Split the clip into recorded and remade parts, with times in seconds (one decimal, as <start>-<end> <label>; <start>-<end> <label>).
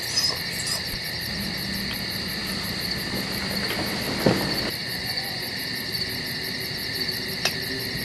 0.0-4.8 recorded; 4.8-5.5 remade; 5.5-8.0 recorded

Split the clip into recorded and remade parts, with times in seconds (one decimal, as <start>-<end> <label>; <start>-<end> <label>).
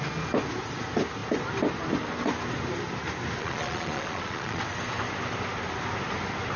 0.0-3.4 recorded; 3.4-4.6 remade; 4.6-6.6 recorded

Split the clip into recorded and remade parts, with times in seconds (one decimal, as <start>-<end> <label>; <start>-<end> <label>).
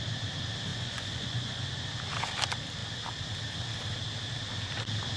0.0-0.7 recorded; 0.7-1.8 remade; 1.8-5.2 recorded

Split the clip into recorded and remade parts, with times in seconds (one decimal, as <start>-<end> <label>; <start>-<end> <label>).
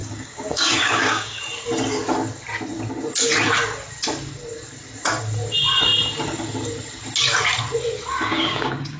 0.0-1.4 remade; 1.4-8.1 recorded; 8.1-9.0 remade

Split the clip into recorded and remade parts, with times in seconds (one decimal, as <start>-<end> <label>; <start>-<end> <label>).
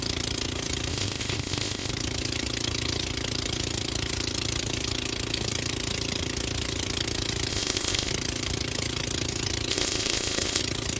0.0-0.9 recorded; 0.9-1.9 remade; 1.9-7.5 recorded; 7.5-8.1 remade; 8.1-9.7 recorded; 9.7-10.6 remade; 10.6-11.0 recorded